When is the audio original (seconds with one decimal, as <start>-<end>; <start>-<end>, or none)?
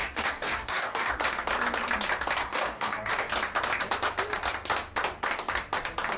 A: 1.1-2.4; 3.1-6.2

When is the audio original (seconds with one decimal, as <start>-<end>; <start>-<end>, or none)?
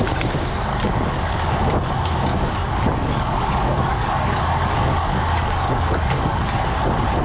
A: 0.0-0.7; 1.5-2.3; 6.6-7.2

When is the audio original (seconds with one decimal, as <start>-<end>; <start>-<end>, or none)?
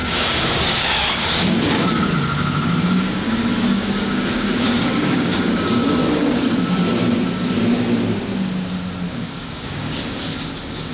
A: 2.1-2.9; 6.0-9.1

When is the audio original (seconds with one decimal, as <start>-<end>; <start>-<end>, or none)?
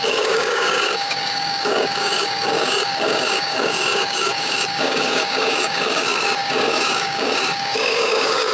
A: none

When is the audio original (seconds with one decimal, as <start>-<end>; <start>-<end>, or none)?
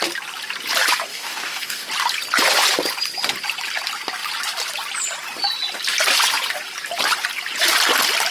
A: 0.0-1.1; 1.9-8.3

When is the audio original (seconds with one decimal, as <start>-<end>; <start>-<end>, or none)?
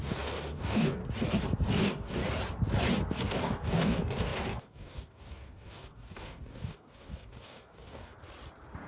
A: 1.0-1.7; 2.2-3.1; 8.1-8.9